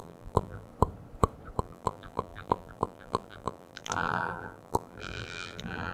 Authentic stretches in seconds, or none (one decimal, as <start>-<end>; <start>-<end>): 0.7-1.6